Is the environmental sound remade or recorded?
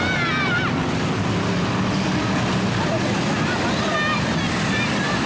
recorded